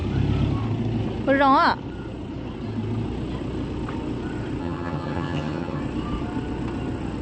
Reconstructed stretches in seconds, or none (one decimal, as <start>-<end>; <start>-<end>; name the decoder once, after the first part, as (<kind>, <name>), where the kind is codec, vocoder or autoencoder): 4.6-5.8 (vocoder, HiFi-GAN)